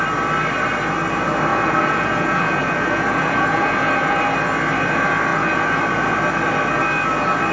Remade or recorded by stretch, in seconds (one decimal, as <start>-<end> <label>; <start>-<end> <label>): 0.0-1.5 recorded; 1.5-4.2 remade; 4.2-5.3 recorded; 5.3-5.8 remade; 5.8-7.5 recorded